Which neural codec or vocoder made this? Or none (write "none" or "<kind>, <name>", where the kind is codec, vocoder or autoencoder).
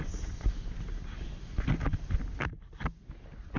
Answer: none